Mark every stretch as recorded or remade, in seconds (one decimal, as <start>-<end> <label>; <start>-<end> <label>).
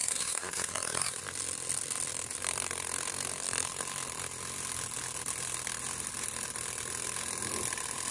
0.0-1.2 remade; 1.2-8.1 recorded